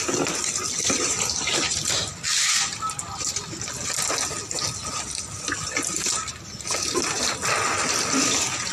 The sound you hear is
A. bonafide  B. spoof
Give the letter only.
A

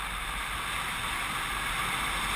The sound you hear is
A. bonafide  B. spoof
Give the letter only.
A